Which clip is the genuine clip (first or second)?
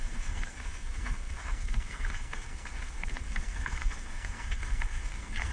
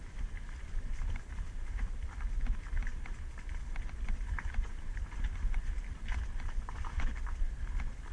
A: second